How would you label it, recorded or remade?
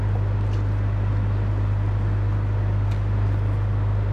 recorded